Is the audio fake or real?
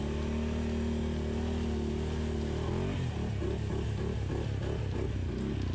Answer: real